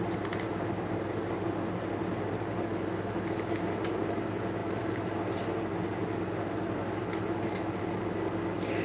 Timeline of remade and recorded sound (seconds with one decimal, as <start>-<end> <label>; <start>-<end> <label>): 0.0-8.8 recorded